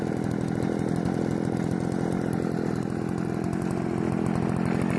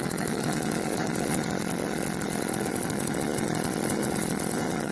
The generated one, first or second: second